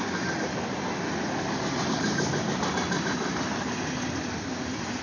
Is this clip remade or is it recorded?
recorded